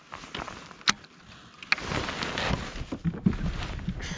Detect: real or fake real